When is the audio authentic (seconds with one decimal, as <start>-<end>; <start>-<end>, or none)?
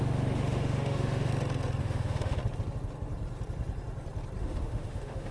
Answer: 1.3-1.8; 2.4-4.4